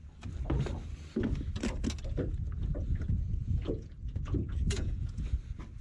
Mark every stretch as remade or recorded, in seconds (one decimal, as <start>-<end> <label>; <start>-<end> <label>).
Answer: 0.0-3.4 recorded; 3.4-5.2 remade; 5.2-5.8 recorded